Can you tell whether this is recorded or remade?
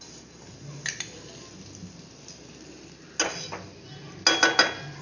recorded